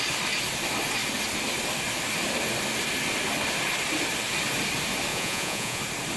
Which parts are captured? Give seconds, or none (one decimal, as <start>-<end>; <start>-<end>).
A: 0.0-5.1; 5.8-6.2